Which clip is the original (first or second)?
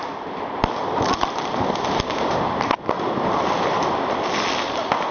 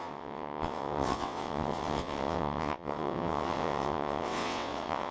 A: first